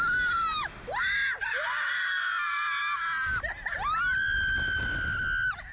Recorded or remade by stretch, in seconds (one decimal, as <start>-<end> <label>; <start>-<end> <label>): 0.0-5.7 recorded